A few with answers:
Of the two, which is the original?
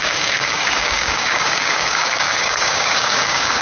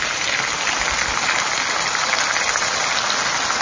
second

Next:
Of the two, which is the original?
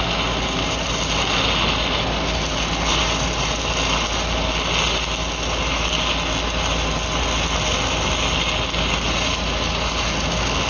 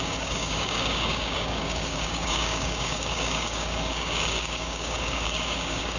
first